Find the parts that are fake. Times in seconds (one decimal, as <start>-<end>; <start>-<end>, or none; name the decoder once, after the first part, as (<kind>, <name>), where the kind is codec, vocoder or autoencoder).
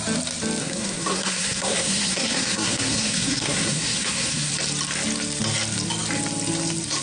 0.6-4.5 (codec, SNAC)